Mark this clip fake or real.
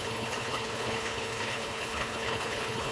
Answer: fake